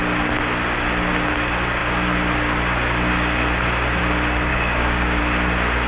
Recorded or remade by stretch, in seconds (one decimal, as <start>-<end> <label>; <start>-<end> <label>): 0.0-4.5 recorded; 4.5-5.2 remade; 5.2-5.9 recorded

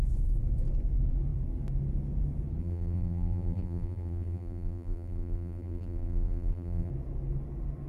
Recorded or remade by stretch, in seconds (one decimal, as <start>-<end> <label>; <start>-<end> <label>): 0.0-2.6 recorded; 2.6-6.9 remade; 6.9-7.9 recorded